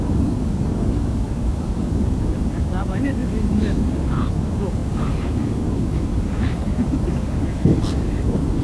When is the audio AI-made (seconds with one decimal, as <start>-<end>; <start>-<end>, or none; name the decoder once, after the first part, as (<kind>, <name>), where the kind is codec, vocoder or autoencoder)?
0.0-8.6 (codec, DAC)